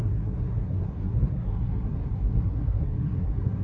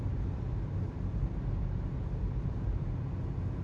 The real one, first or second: second